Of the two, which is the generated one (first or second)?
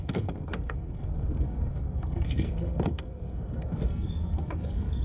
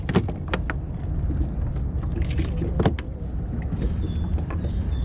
first